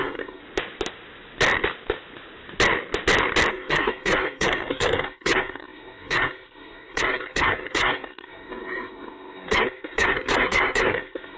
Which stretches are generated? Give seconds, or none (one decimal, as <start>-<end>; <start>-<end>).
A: 0.0-0.4; 3.5-11.4